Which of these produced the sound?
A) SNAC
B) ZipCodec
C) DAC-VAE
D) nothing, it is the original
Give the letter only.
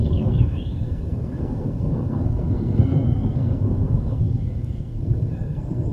A